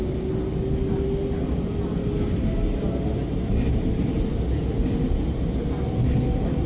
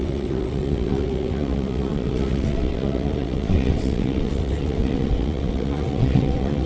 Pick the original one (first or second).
first